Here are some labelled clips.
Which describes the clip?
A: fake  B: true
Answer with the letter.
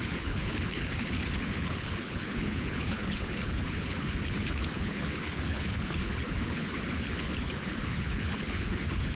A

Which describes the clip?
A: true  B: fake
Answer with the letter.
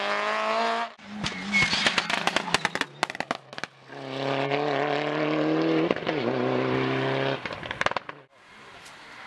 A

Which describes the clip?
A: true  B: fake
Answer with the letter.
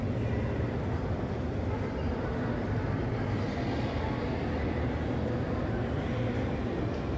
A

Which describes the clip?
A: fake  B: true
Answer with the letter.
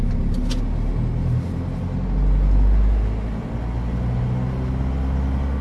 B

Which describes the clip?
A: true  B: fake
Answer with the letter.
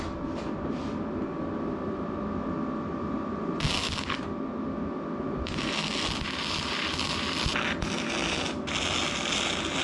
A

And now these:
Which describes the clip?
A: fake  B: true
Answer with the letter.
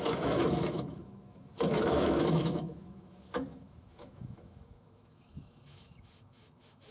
A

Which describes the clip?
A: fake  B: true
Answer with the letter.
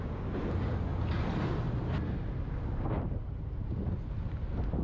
B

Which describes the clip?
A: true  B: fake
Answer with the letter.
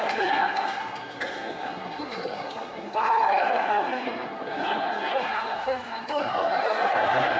B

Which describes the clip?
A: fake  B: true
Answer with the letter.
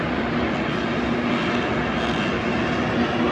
B